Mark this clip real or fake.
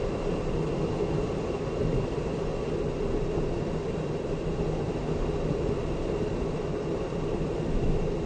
real